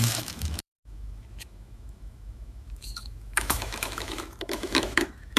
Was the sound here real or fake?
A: fake